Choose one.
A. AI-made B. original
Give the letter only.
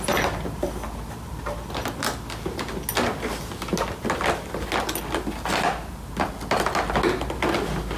B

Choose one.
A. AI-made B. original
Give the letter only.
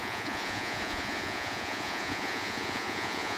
A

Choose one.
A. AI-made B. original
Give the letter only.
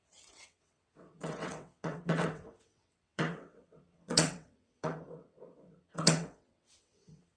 A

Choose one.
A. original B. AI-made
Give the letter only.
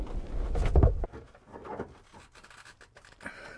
A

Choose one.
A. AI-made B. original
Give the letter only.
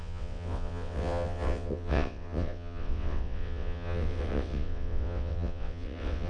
A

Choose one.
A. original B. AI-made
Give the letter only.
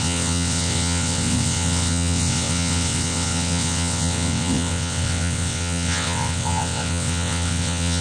B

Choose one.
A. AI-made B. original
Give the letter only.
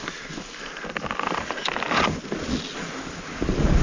B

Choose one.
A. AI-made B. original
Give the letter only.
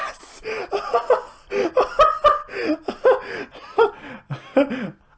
B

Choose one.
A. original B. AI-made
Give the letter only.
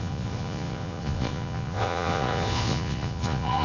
B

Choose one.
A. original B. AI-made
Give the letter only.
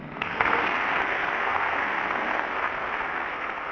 B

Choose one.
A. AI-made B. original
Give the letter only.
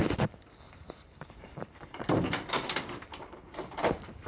A